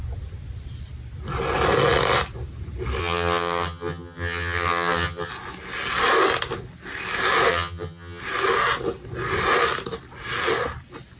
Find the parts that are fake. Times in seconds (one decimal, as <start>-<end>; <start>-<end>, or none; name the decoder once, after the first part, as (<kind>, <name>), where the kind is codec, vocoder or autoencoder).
3.0-5.3 (vocoder, HiFi-GAN); 7.5-8.2

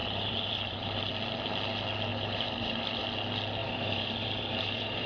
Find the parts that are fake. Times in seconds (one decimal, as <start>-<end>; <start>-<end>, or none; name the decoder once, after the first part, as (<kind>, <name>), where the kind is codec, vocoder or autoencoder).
0.0-1.1 (vocoder, BigVGAN v2); 2.1-3.0; 3.6-5.1

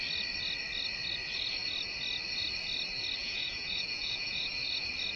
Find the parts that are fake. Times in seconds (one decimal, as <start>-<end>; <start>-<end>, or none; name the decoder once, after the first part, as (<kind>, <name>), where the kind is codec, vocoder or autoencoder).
3.2-4.5 (vocoder, Vocos)

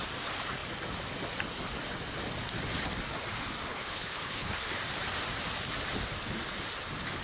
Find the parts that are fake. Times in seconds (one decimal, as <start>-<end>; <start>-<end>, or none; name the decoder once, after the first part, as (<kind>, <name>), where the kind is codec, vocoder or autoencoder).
3.7-4.8 (codec, HILCodec)

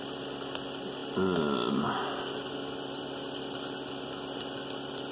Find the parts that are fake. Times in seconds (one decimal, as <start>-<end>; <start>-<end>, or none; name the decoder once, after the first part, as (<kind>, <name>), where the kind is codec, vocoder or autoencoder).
none

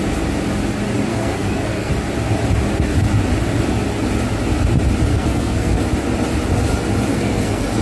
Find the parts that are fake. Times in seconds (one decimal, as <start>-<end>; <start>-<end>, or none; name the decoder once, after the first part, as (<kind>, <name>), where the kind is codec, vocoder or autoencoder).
1.1-1.9 (codec, SNAC); 5.1-5.8; 7.1-7.8

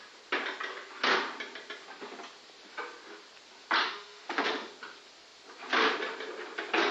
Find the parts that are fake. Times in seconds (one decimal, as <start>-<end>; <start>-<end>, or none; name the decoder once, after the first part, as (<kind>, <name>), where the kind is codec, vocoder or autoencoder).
3.8-4.7 (autoencoder, DAC-VAE)